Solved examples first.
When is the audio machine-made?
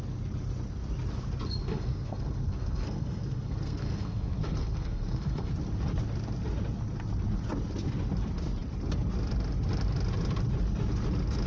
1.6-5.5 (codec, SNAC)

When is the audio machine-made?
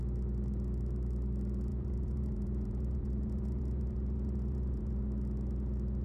1.7-5.0 (vocoder, Vocos)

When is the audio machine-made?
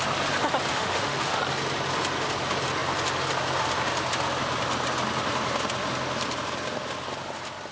0.7-1.4 (autoencoder, DAC-VAE)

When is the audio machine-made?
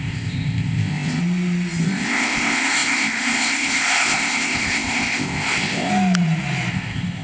0.0-1.2 (codec, ZipCodec); 1.8-5.9; 6.7-7.2